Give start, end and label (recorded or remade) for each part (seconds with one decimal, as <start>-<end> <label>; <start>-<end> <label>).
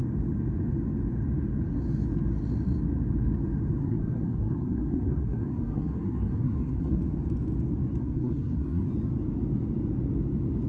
0.0-3.8 recorded; 3.8-7.0 remade; 7.0-8.0 recorded; 8.0-8.9 remade; 8.9-10.7 recorded